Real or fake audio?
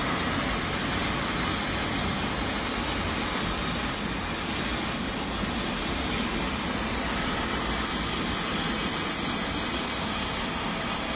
real